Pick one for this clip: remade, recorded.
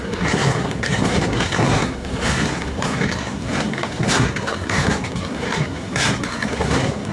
remade